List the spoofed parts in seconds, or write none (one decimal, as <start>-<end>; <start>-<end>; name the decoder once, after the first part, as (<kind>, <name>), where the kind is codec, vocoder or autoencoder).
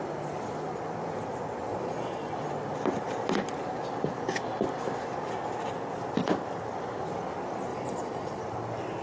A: 1.7-2.3 (vocoder, Vocos); 7.7-8.4